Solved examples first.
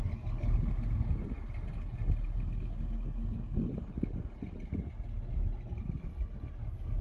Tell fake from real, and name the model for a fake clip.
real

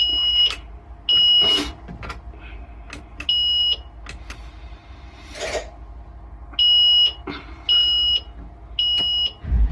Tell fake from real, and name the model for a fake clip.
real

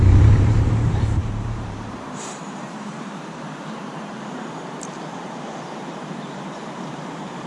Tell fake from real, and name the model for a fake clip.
fake, vocoder, BigVGAN v2